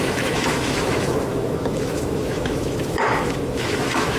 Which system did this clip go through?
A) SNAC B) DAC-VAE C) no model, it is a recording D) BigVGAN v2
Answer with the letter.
B